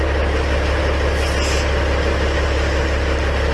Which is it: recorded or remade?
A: recorded